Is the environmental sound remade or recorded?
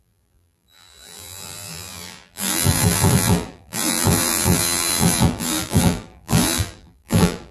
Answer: remade